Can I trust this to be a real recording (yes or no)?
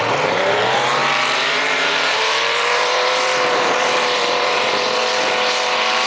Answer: no